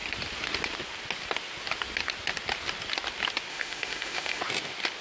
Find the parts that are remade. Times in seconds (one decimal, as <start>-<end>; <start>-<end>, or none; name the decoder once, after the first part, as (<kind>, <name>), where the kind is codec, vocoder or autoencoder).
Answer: 3.5-4.4 (autoencoder, DAC-VAE)